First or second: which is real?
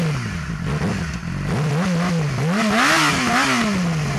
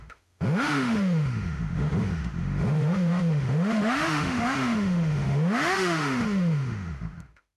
first